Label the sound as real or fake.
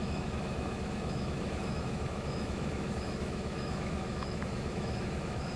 fake